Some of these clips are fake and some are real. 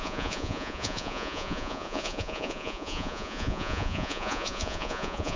fake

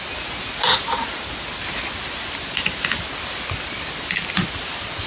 real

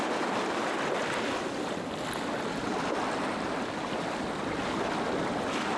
real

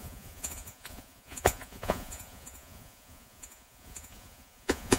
fake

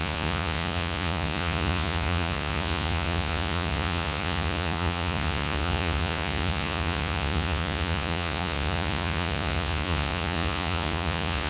fake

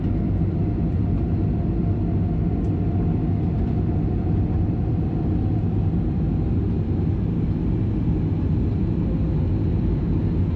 real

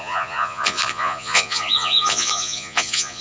fake